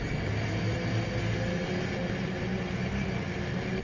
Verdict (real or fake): real